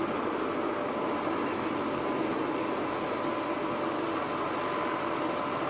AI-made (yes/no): no